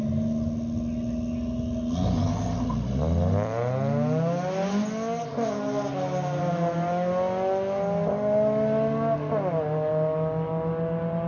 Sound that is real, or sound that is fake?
real